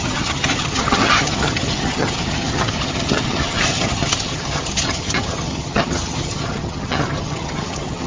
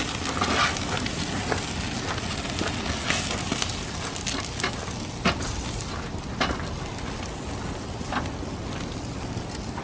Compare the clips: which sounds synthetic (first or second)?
first